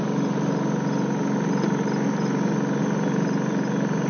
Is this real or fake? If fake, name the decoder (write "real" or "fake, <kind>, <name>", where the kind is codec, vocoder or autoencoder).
real